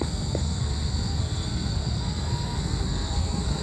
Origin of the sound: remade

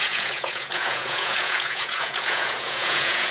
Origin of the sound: remade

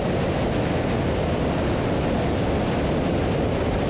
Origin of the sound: recorded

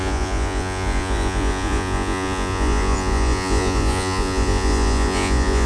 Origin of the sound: remade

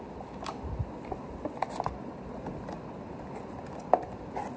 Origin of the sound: recorded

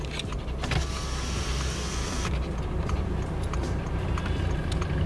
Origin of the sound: recorded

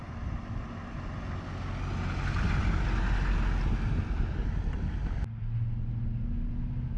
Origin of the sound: recorded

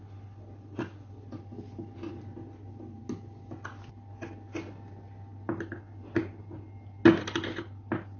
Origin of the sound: recorded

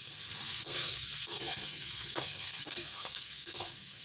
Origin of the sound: remade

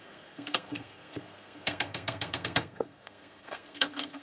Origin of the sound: remade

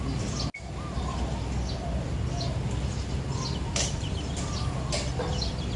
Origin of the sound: recorded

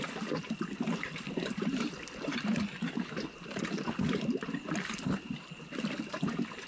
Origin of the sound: recorded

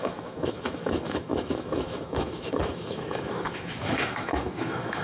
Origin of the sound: remade